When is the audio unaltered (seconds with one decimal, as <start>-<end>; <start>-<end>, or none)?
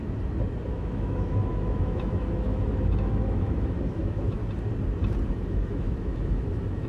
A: 0.0-0.7; 4.4-5.3